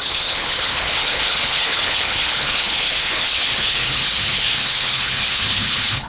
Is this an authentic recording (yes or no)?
no